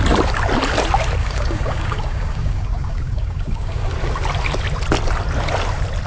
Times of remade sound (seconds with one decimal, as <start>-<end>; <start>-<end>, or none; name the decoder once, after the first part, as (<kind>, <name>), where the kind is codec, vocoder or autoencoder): 1.2-3.9 (codec, DAC)